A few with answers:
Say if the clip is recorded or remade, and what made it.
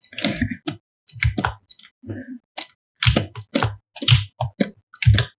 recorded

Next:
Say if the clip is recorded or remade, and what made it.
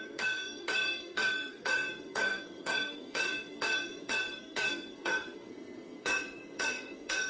remade, codec, SNAC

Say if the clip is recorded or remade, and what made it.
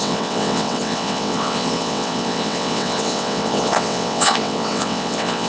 remade, vocoder, WaveNeXt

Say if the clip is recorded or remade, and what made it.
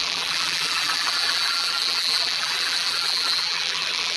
remade, vocoder, BigVGAN v2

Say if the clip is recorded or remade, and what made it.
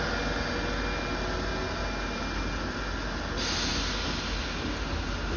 recorded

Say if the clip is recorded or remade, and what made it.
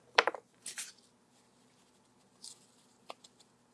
recorded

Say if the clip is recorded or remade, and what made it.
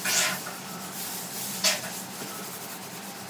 remade, vocoder, BigVGAN v2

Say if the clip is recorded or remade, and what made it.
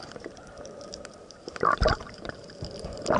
remade, vocoder, BigVGAN v2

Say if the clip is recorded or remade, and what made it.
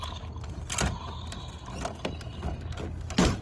recorded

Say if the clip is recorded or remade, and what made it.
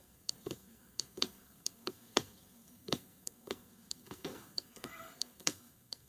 remade, codec, SNAC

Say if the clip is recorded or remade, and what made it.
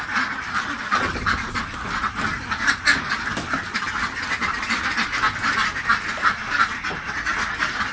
recorded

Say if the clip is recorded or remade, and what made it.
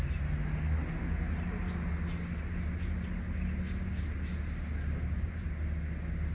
recorded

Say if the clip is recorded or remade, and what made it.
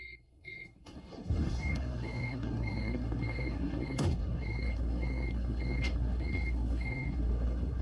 remade, codec, SNAC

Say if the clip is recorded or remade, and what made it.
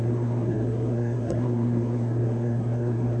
remade, codec, SNAC